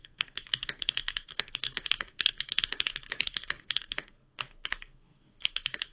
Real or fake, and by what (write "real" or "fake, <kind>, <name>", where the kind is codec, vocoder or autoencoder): fake, codec, SNAC